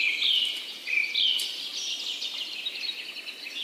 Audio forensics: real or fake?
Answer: real